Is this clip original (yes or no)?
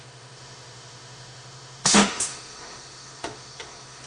no